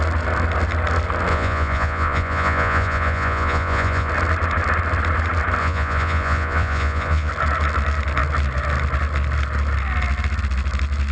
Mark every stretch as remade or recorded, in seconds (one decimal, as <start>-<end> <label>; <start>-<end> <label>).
0.0-1.3 recorded; 1.3-4.1 remade; 4.1-5.6 recorded; 5.6-7.3 remade; 7.3-11.1 recorded